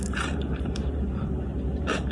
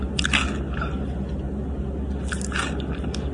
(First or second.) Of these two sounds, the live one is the second